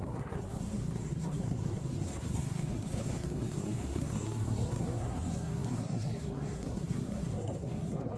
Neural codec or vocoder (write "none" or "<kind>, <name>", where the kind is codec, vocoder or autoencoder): codec, SNAC